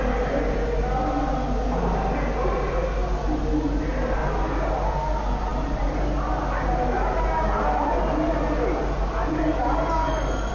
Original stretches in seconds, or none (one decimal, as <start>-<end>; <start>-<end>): 0.0-10.5